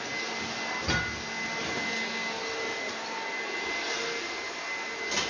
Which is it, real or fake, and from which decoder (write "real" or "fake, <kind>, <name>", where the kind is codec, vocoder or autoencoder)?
real